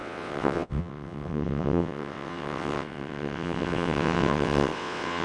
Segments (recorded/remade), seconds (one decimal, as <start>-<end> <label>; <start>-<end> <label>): 0.0-5.2 remade